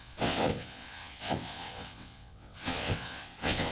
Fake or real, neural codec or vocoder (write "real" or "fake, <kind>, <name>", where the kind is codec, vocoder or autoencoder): fake, vocoder, WaveNeXt